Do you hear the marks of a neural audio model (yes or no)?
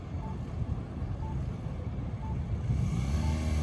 no